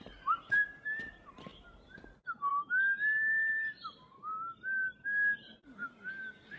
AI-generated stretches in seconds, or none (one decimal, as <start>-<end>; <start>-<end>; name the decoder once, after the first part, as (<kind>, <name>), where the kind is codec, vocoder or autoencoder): none